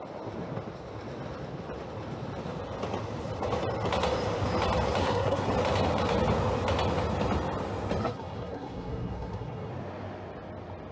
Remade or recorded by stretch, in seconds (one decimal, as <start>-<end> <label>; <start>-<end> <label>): 0.0-5.0 recorded; 5.0-5.5 remade; 5.5-8.0 recorded; 8.0-9.7 remade; 9.7-10.9 recorded